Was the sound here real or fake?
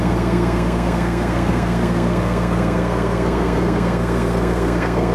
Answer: fake